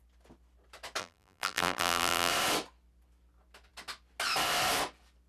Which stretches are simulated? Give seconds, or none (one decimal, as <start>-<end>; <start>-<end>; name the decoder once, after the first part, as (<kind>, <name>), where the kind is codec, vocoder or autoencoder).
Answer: 1.0-2.3 (vocoder, BigVGAN v2)